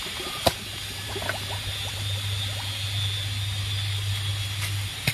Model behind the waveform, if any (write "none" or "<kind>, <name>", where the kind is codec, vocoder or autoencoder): none